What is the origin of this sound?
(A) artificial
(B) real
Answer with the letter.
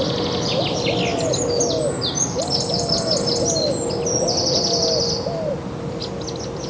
B